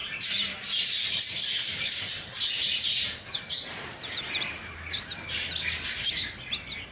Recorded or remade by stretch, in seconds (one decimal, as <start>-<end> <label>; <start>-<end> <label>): 0.0-1.2 remade; 1.2-1.7 recorded; 1.7-2.4 remade; 2.4-3.3 recorded; 3.3-5.5 remade; 5.5-6.9 recorded